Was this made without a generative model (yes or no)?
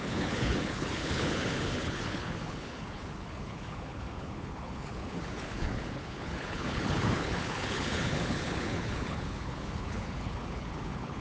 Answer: no